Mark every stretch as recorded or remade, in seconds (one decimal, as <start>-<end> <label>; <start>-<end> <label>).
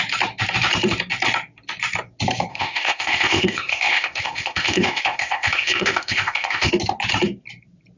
0.0-2.5 recorded; 2.5-6.7 remade; 6.7-8.0 recorded